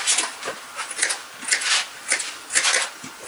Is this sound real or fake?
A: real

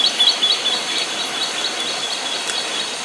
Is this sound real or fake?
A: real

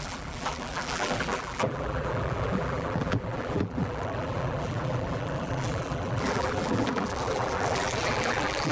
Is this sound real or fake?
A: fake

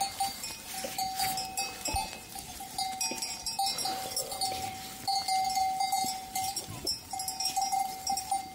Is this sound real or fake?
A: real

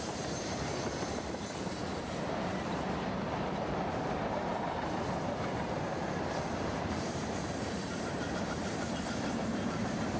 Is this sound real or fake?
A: fake